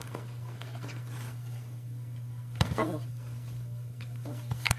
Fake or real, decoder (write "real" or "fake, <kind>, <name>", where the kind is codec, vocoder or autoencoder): fake, codec, SNAC